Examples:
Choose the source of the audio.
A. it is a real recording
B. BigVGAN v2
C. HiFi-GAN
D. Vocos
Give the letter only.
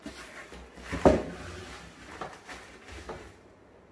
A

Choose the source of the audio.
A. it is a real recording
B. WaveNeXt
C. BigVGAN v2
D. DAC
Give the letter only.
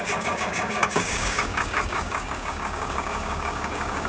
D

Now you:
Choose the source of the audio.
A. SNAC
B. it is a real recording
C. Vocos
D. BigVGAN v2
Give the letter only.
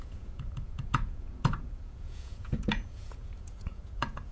C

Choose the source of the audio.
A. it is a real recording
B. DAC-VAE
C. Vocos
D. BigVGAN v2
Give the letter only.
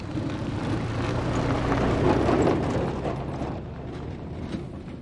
A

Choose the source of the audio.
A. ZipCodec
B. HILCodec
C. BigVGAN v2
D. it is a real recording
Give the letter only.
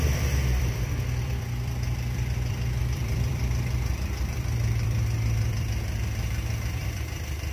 C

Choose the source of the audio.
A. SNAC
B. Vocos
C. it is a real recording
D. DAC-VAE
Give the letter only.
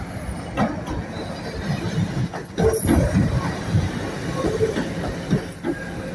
C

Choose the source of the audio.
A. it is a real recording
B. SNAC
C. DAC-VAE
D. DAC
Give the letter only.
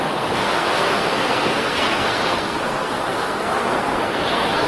B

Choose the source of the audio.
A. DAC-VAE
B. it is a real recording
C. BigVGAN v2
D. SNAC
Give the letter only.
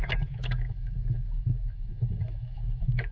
A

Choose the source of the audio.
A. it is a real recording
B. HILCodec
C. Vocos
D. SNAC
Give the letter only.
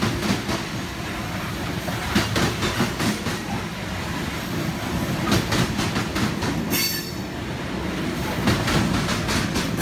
A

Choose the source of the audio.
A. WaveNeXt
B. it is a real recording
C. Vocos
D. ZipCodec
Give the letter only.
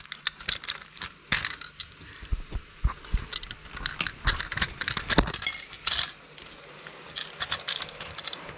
B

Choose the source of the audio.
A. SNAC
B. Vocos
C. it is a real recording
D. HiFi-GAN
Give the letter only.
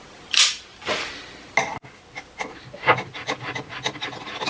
C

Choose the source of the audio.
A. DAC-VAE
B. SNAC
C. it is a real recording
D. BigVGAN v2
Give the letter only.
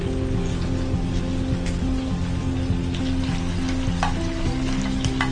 C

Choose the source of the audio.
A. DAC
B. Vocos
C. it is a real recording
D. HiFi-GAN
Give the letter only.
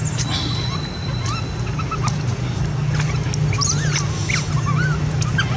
C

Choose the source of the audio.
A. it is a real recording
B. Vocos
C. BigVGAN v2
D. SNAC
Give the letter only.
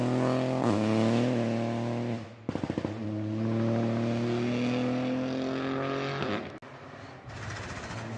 A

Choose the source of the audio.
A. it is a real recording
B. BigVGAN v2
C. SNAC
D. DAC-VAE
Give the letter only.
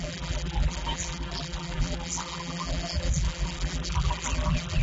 B